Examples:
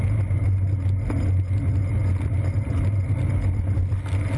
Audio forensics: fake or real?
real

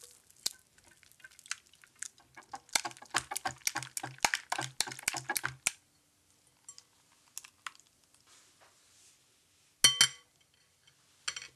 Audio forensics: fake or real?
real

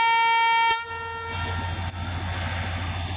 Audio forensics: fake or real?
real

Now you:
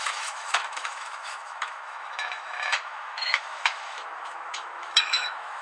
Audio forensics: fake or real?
fake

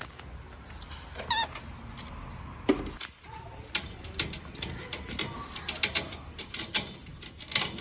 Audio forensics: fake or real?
real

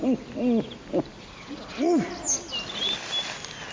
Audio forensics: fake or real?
real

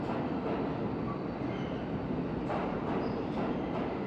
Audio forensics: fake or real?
real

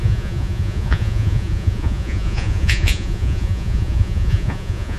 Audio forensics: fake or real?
fake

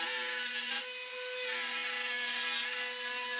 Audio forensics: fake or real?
real